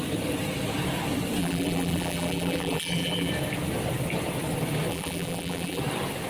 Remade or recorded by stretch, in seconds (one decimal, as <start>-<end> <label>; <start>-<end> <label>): 0.0-1.4 recorded; 1.4-3.3 remade; 3.3-4.9 recorded; 4.9-5.8 remade; 5.8-6.3 recorded